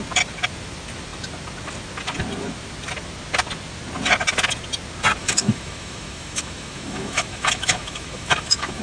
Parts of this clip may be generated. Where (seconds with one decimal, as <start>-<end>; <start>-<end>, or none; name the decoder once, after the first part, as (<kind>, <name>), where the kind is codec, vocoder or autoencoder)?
5.2-8.8 (autoencoder, DAC-VAE)